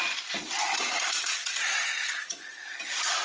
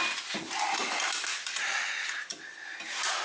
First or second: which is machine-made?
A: first